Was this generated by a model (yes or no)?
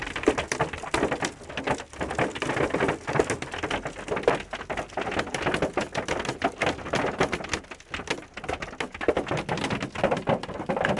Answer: no